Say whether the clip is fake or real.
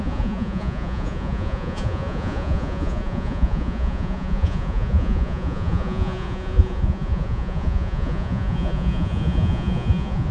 fake